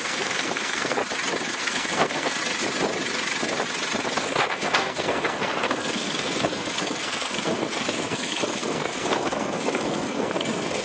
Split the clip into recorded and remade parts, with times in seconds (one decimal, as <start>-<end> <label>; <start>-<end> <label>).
0.0-1.0 remade; 1.0-1.6 recorded; 1.6-2.4 remade; 2.4-4.2 recorded; 4.2-10.8 remade